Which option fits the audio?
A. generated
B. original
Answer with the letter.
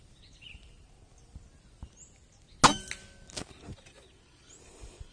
B